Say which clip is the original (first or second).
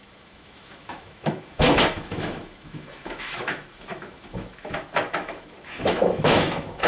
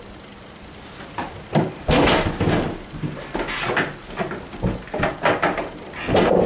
second